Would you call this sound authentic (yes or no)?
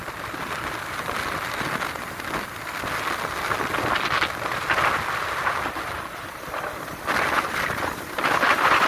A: yes